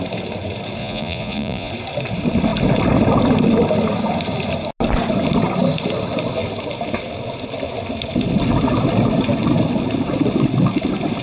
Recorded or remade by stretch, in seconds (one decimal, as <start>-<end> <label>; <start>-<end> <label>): 0.0-0.8 recorded; 0.8-1.7 remade; 1.7-11.2 recorded